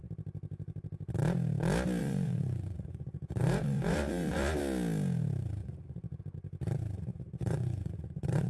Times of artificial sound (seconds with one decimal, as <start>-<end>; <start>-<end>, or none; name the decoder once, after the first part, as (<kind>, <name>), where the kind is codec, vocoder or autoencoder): 2.0-4.6 (vocoder, Vocos); 5.6-6.2; 7.1-8.5